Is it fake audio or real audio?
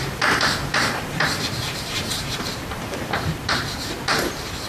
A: fake